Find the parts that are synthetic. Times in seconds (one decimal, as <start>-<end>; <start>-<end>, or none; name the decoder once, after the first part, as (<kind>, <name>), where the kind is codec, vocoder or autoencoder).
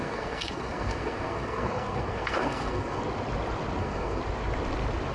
0.0-3.0 (codec, SNAC); 3.8-4.2